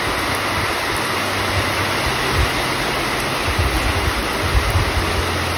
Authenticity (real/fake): real